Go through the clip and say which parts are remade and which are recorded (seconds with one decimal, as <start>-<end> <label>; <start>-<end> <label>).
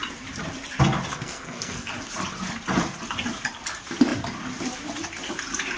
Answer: 0.0-1.1 recorded; 1.1-1.9 remade; 1.9-5.8 recorded